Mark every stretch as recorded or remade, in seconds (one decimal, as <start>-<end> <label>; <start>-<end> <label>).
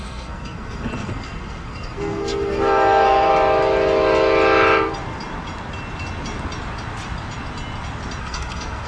0.0-3.3 remade; 3.3-8.2 recorded; 8.2-8.9 remade